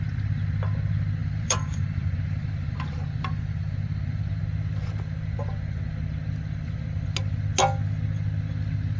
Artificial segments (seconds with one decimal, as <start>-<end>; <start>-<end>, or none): 1.2-4.4

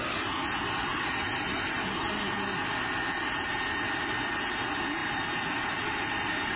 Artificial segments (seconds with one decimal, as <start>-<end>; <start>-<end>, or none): none

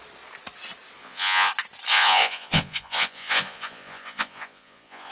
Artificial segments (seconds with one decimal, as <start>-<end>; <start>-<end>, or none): 1.0-1.5; 1.9-5.1

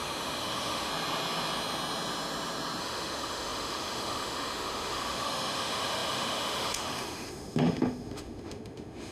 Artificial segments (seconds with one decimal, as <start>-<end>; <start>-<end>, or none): 0.0-0.9; 2.8-9.1

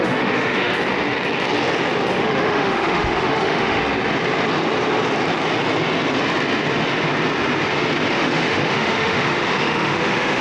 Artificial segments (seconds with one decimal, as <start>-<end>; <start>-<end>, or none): 0.0-0.7; 2.2-3.8; 8.1-10.4

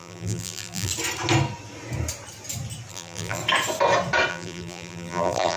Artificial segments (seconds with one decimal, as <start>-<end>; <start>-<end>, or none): 0.0-0.9; 2.9-3.4; 4.3-5.6

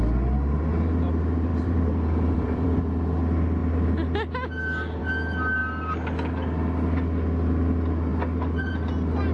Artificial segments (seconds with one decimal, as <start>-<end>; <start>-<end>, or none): 1.5-2.8

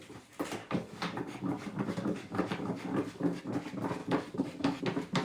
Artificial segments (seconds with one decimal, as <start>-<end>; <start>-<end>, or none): 0.6-3.4; 4.0-4.8